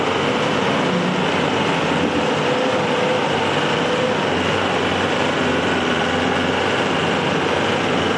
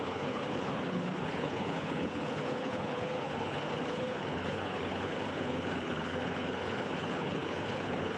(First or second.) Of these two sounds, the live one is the first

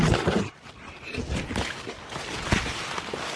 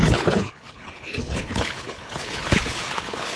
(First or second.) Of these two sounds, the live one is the first